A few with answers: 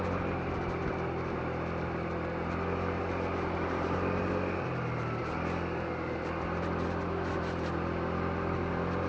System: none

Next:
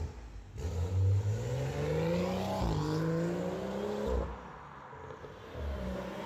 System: none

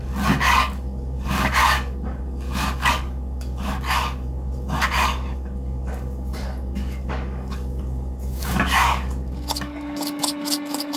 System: codec, DAC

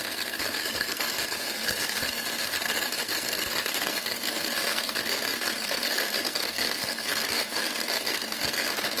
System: codec, SNAC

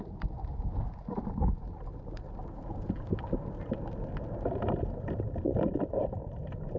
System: none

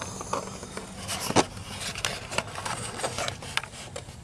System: none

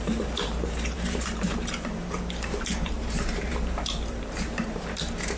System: vocoder, BigVGAN v2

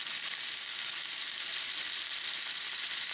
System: none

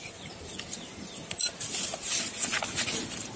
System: none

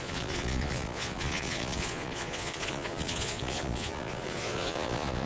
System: vocoder, Vocos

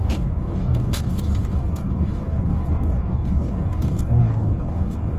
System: codec, DAC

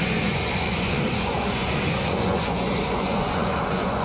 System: vocoder, Vocos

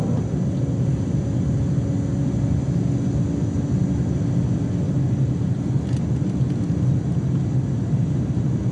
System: none